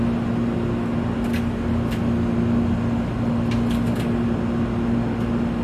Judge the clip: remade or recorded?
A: recorded